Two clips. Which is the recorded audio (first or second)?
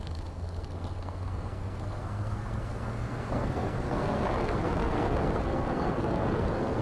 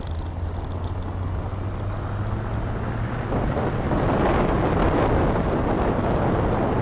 second